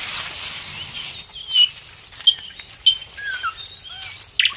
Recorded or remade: recorded